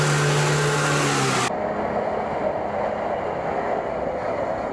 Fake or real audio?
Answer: real